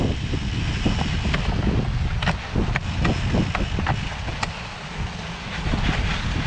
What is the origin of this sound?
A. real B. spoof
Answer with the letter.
A